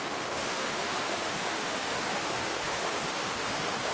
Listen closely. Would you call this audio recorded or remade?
remade